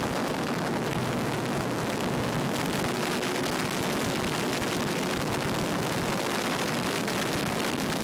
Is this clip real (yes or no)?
yes